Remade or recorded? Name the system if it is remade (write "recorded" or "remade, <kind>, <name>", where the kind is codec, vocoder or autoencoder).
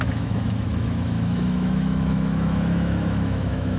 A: remade, autoencoder, DAC-VAE